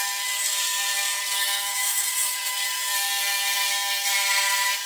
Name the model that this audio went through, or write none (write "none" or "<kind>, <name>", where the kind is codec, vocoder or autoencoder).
codec, SNAC